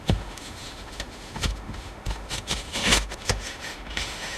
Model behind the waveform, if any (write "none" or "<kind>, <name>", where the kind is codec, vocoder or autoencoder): autoencoder, DAC-VAE